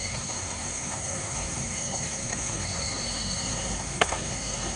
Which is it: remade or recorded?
remade